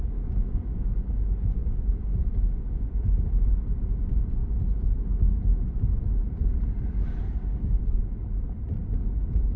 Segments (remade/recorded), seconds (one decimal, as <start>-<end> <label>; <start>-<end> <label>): 0.0-9.6 recorded

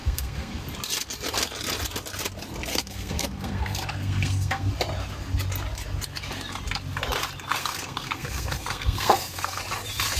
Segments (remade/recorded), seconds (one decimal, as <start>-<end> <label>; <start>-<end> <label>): 0.0-0.6 remade; 0.6-2.7 recorded; 2.7-4.7 remade; 4.7-7.6 recorded; 7.6-9.6 remade; 9.6-10.2 recorded

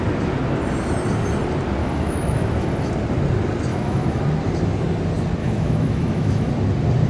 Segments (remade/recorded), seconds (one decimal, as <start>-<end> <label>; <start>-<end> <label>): 0.0-1.8 recorded; 1.8-2.9 remade; 2.9-3.7 recorded; 3.7-4.2 remade; 4.2-5.4 recorded; 5.4-6.5 remade; 6.5-7.1 recorded

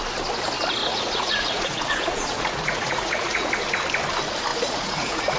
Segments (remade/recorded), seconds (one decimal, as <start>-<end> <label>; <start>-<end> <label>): 0.0-0.8 recorded; 0.8-3.5 remade; 3.5-4.5 recorded; 4.5-5.4 remade

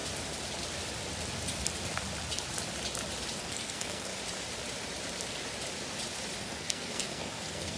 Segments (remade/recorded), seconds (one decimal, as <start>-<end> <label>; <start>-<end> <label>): 0.0-3.4 recorded; 3.4-4.1 remade; 4.1-6.4 recorded; 6.4-7.8 remade

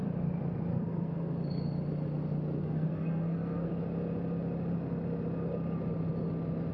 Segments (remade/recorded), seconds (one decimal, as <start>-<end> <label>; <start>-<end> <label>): 0.0-0.7 recorded; 0.7-1.4 remade; 1.4-2.6 recorded; 2.6-3.7 remade; 3.7-6.7 recorded